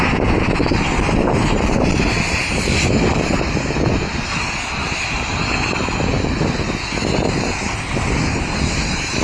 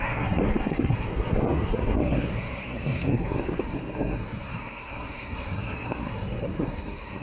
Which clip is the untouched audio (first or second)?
first